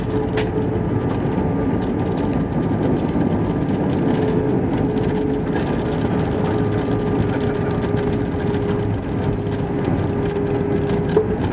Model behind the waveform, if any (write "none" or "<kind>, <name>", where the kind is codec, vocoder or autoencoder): none